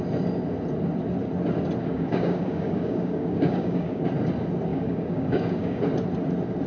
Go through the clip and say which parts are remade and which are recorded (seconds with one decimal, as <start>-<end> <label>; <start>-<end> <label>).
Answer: 0.0-1.8 recorded; 1.8-4.0 remade; 4.0-4.7 recorded; 4.7-5.8 remade; 5.8-6.7 recorded